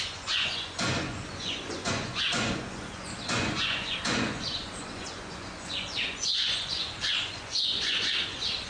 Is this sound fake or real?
fake